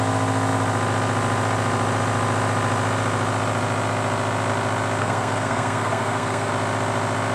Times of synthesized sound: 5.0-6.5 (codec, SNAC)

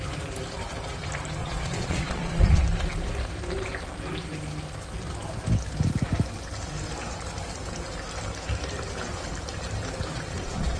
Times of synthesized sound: 1.4-2.6 (vocoder, Vocos); 10.1-10.8

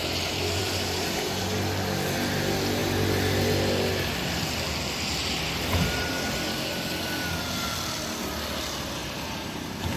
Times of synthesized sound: 0.6-1.4 (vocoder, BigVGAN v2); 9.0-10.0